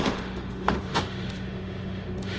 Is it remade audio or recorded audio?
remade